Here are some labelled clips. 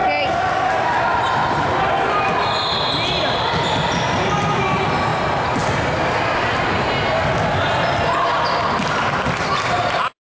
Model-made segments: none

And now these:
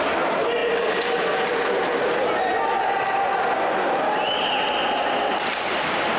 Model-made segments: none

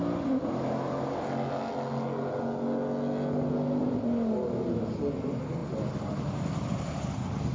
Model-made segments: none

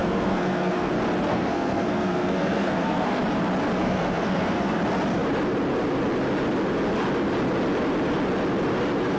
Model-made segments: 0.0-0.9 (codec, SNAC); 1.3-3.2; 3.8-4.8

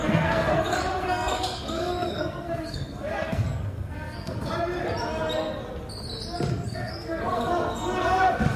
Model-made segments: 0.0-4.5 (codec, SNAC); 6.5-8.6

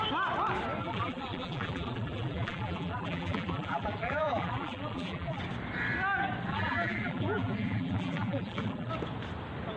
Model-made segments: 0.8-5.4 (vocoder, BigVGAN v2); 6.5-8.9